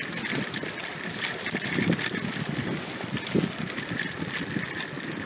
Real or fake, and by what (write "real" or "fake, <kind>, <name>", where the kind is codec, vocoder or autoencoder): real